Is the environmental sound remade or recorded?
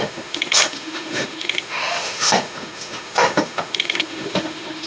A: remade